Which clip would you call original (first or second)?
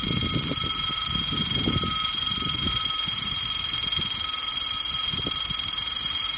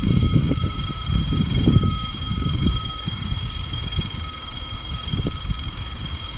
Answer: first